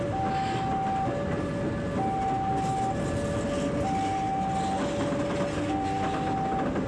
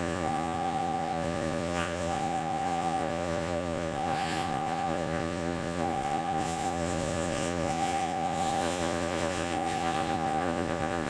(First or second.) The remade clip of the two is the second